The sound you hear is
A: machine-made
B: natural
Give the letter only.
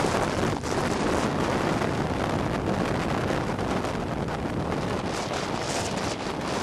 B